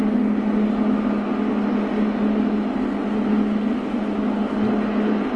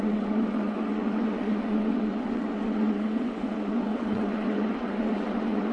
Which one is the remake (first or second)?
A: second